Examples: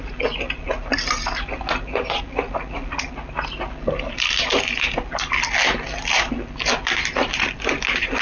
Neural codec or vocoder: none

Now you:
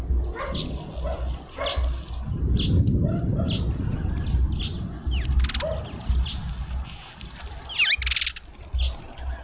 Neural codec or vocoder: none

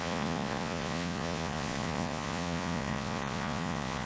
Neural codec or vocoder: vocoder, Vocos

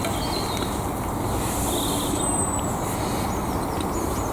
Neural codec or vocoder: none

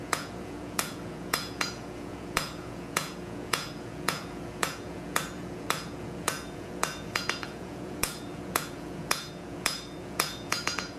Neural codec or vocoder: vocoder, Vocos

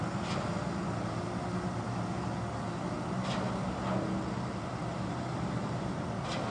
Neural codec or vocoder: none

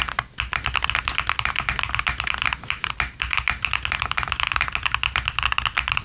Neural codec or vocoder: none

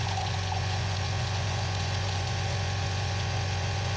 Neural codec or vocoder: vocoder, Vocos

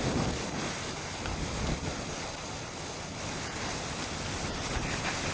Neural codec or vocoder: none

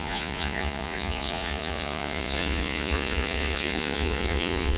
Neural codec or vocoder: vocoder, Vocos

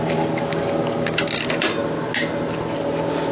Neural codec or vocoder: none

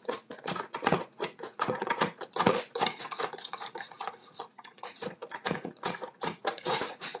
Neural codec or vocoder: vocoder, Vocos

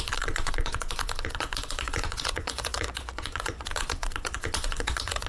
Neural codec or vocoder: vocoder, Vocos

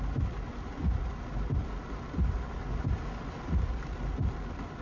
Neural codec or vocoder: none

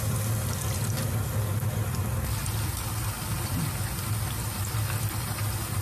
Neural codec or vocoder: none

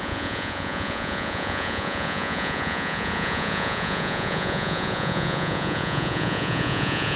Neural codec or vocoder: vocoder, Vocos